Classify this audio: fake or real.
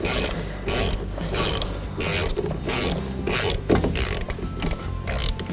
real